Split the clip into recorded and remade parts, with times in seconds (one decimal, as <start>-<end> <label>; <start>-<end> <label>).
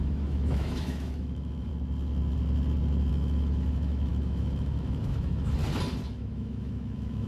0.0-1.7 remade; 1.7-3.1 recorded; 3.1-5.6 remade; 5.6-6.2 recorded; 6.2-7.3 remade